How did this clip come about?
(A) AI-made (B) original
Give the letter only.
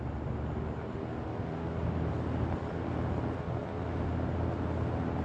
B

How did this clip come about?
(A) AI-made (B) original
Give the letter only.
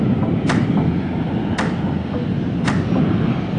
B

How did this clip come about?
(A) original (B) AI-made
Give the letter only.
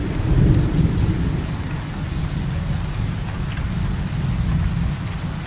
A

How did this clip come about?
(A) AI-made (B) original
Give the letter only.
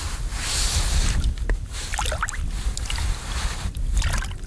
B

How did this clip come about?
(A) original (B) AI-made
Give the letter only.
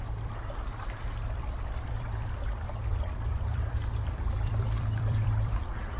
B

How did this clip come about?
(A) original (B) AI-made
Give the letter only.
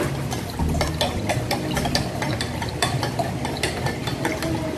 A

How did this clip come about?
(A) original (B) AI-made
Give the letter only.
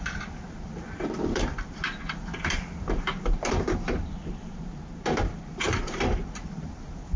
B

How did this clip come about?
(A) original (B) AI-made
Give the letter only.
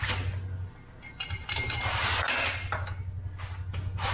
A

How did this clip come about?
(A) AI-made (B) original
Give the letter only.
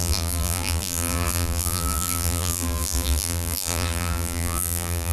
A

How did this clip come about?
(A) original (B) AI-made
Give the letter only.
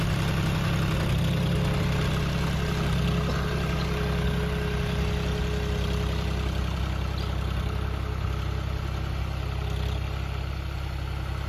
A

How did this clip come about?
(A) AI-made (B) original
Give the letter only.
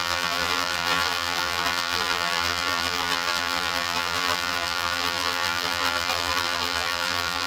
A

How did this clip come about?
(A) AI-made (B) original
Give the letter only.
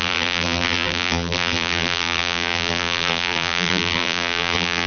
A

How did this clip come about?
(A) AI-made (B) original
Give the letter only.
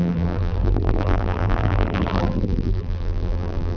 A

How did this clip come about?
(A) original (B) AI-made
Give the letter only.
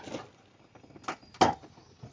A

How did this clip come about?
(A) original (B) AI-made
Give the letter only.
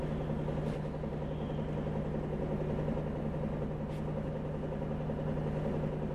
A